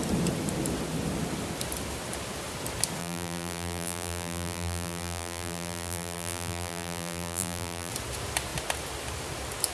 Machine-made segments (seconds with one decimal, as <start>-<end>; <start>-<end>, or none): 3.0-7.9